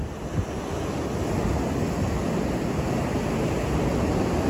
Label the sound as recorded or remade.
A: recorded